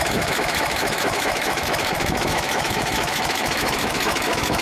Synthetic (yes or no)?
yes